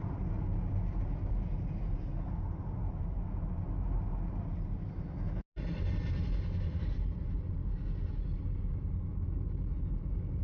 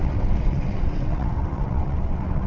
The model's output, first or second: second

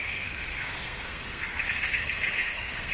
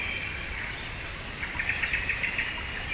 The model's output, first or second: first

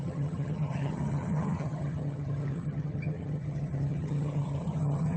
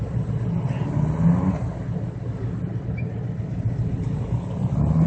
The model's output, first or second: first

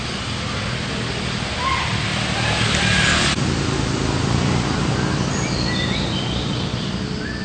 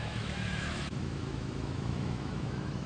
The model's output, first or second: second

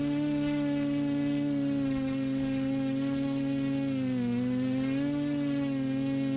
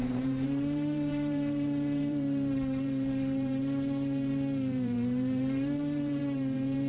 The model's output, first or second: second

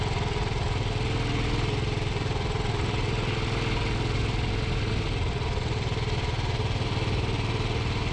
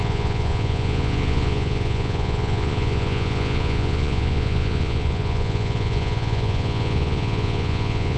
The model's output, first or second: second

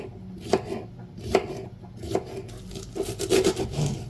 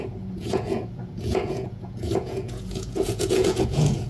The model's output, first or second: second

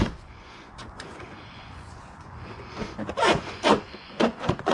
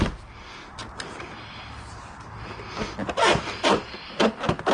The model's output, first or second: first